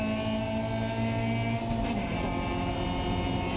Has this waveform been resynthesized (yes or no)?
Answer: no